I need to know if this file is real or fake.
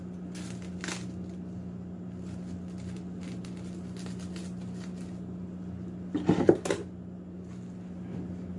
real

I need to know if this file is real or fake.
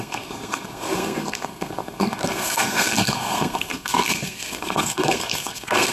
fake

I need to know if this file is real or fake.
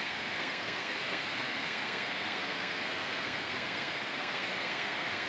fake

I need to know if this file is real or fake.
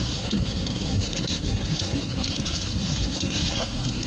fake